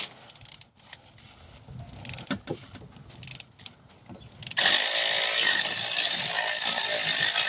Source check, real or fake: real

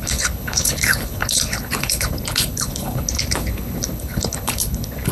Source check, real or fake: fake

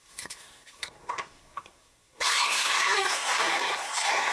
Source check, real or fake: fake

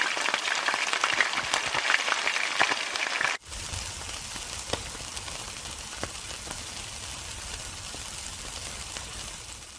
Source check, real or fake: real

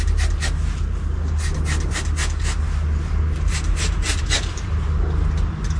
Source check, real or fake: real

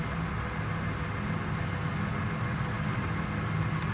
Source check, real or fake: real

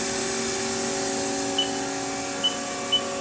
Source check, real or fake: real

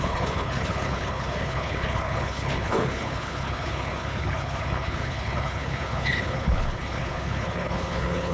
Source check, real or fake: fake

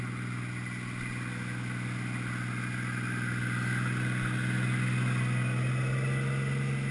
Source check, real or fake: real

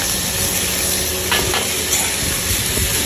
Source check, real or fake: real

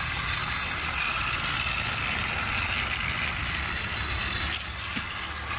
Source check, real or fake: real